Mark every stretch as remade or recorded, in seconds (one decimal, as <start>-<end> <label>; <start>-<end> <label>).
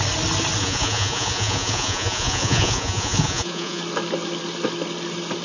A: 0.0-0.6 recorded; 0.6-3.8 remade; 3.8-5.4 recorded